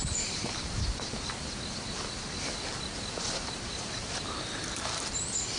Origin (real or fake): real